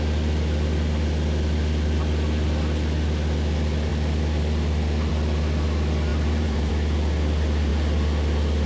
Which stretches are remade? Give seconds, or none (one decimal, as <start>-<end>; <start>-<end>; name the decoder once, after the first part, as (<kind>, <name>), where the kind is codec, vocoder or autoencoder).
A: 6.1-6.7 (vocoder, BigVGAN v2)